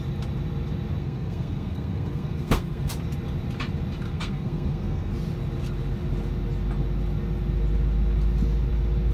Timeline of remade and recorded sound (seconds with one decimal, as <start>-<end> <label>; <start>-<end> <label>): 0.0-1.0 recorded; 1.0-2.9 remade; 2.9-4.1 recorded; 4.1-5.1 remade; 5.1-9.1 recorded